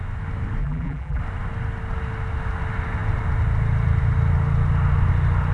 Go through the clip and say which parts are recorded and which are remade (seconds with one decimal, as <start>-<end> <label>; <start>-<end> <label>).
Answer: 0.0-0.6 recorded; 0.6-1.2 remade; 1.2-5.5 recorded